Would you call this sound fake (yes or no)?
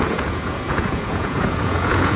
yes